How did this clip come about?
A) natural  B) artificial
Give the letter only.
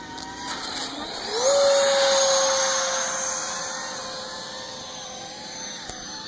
A